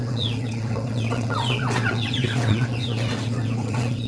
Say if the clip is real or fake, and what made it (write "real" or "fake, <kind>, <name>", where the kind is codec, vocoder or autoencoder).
fake, vocoder, WaveNeXt